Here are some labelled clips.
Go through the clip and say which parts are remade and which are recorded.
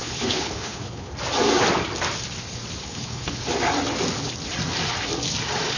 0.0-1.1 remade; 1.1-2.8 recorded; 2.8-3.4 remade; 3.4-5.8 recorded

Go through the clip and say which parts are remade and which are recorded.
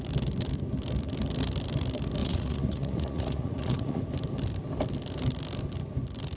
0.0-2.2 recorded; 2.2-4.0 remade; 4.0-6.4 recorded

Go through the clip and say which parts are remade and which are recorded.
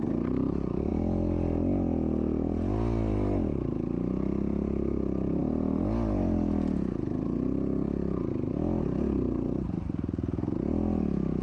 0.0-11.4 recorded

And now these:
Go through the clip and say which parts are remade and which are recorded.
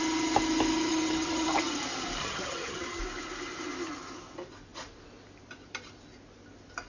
0.0-0.9 recorded; 0.9-1.6 remade; 1.6-2.2 recorded; 2.2-3.0 remade; 3.0-6.9 recorded